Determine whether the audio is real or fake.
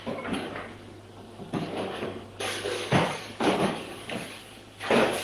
fake